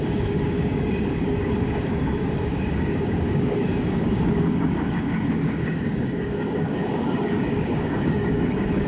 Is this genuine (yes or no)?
no